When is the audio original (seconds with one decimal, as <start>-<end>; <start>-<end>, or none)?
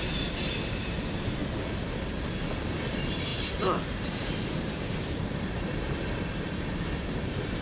none